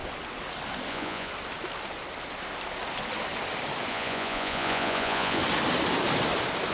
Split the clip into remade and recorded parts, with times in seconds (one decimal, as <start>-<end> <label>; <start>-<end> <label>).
0.0-0.9 recorded; 0.9-1.3 remade; 1.3-3.9 recorded; 3.9-5.4 remade; 5.4-6.7 recorded